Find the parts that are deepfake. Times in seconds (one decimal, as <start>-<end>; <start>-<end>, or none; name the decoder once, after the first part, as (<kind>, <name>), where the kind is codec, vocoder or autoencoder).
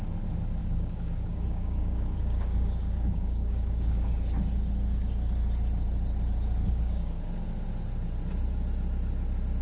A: 0.6-4.1 (codec, DAC); 6.6-7.3